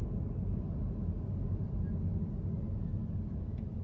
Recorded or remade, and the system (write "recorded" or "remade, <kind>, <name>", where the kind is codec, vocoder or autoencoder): recorded